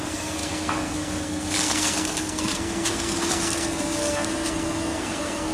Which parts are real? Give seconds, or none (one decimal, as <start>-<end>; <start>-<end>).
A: none